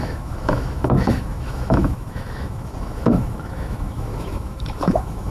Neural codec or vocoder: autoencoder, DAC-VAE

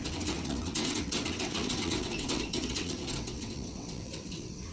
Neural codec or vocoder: vocoder, WaveNeXt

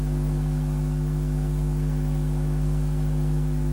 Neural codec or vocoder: codec, SNAC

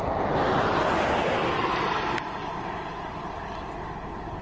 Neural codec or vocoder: vocoder, BigVGAN v2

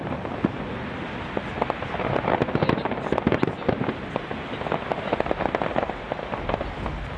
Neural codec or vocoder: none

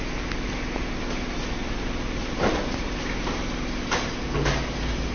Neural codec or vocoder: none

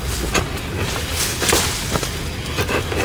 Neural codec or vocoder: none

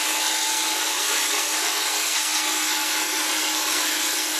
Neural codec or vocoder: codec, SNAC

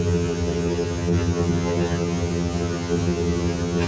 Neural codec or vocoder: vocoder, HiFi-GAN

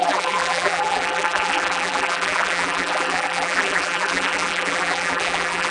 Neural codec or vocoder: vocoder, BigVGAN v2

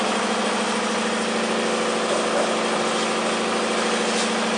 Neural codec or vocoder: none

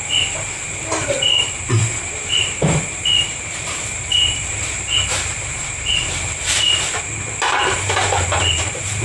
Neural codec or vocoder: vocoder, BigVGAN v2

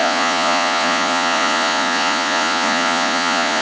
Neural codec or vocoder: vocoder, Vocos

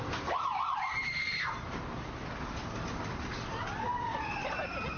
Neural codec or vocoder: none